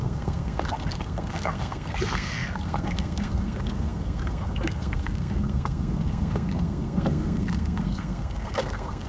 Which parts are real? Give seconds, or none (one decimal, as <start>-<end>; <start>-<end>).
none